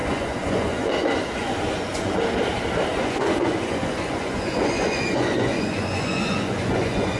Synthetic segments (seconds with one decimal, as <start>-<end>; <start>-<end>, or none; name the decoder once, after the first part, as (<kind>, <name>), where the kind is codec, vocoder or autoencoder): 0.0-0.9 (vocoder, Vocos); 1.4-2.2; 2.9-7.2